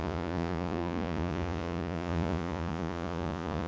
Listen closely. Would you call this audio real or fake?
fake